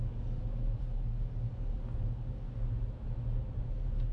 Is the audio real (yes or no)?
yes